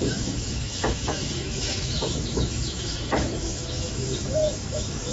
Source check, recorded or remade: remade